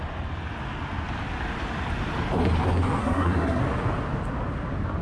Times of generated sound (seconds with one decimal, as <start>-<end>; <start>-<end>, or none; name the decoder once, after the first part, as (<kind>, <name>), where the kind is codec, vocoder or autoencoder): 3.0-3.6 (codec, SNAC)